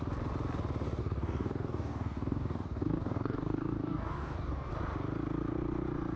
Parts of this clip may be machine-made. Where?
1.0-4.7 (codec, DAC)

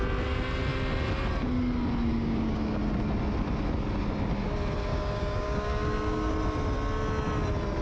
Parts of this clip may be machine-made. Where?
2.1-2.8 (codec, DAC); 4.9-6.3

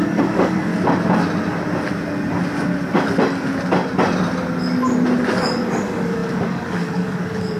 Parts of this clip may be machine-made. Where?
0.0-0.7 (codec, DAC); 5.3-7.6

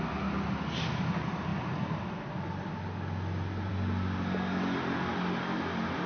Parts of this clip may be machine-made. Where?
none

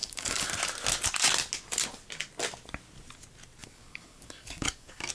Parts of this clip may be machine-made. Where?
0.0-0.5 (codec, DAC); 3.6-5.1